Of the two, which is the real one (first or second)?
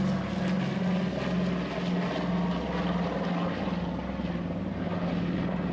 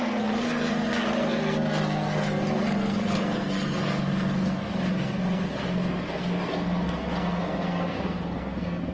first